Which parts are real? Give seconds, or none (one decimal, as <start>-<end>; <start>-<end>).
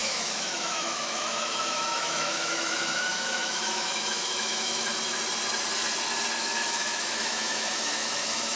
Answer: 4.9-6.4